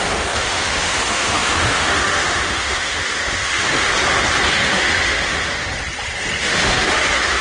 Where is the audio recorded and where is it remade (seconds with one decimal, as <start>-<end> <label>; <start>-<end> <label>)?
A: 0.0-3.9 remade; 3.9-4.5 recorded; 4.5-5.7 remade; 5.7-6.4 recorded; 6.4-7.4 remade